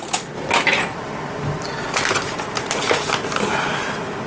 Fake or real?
real